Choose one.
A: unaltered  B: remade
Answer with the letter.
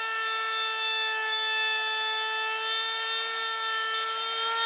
A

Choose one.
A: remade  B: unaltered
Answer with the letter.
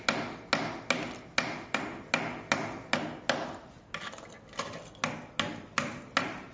B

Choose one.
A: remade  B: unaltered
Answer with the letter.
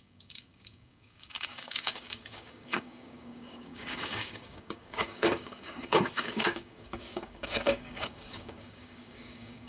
A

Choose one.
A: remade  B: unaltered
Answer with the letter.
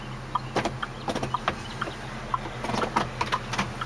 B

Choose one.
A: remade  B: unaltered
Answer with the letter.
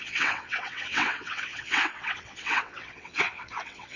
A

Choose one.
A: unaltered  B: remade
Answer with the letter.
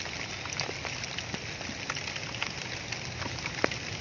A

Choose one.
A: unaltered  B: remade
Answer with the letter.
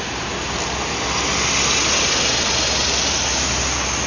A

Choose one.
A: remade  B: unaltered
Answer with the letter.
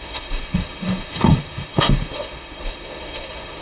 A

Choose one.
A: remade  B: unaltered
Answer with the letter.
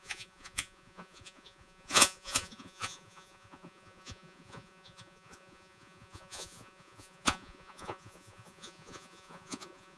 A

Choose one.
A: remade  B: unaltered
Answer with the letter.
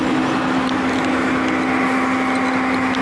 B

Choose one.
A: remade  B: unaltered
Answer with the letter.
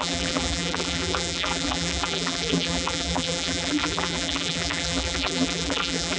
A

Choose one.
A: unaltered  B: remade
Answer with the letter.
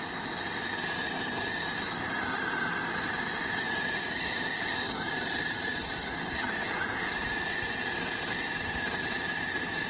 A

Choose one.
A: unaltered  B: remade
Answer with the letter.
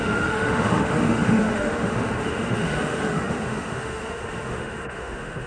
B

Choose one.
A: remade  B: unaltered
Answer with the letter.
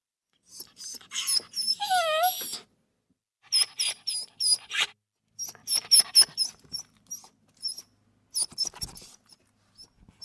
B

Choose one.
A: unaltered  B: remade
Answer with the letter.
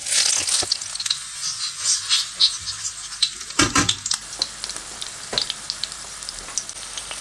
A